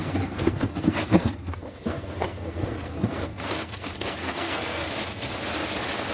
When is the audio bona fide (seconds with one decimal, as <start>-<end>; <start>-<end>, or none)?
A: 4.8-6.1